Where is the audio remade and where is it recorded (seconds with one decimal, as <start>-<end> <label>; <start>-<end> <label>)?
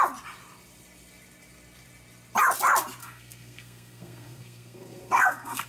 0.0-3.0 recorded; 3.0-5.7 remade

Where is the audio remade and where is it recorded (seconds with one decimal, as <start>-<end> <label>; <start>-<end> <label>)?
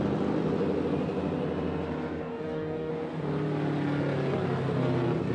0.0-2.2 recorded; 2.2-2.9 remade; 2.9-5.3 recorded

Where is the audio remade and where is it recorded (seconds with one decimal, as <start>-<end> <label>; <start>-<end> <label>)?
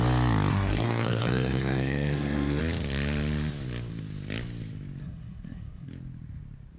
0.0-0.5 recorded; 0.5-2.6 remade; 2.6-5.0 recorded; 5.0-5.9 remade; 5.9-6.8 recorded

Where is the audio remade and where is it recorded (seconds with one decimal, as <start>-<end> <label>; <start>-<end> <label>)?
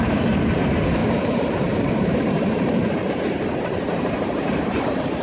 0.0-1.0 remade; 1.0-1.9 recorded; 1.9-5.2 remade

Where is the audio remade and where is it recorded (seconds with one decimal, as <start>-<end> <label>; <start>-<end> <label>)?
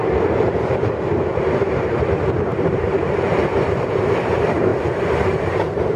0.0-4.7 remade; 4.7-5.4 recorded; 5.4-6.0 remade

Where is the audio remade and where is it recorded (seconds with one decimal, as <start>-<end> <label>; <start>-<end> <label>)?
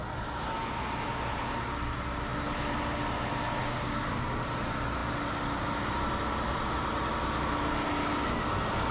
0.0-3.6 recorded; 3.6-4.4 remade; 4.4-8.9 recorded